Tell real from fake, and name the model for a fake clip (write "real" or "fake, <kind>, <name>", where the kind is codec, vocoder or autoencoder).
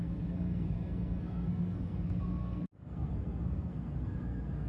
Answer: fake, codec, SNAC